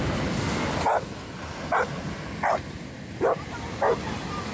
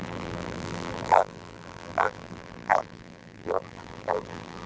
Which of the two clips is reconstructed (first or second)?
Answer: second